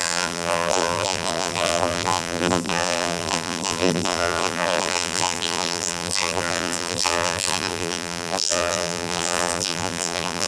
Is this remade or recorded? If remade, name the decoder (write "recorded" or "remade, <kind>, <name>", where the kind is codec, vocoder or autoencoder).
remade, vocoder, BigVGAN v2